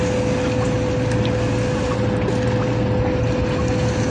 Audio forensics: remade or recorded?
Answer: recorded